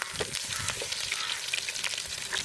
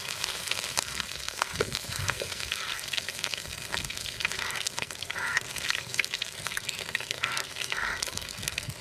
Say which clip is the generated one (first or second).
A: second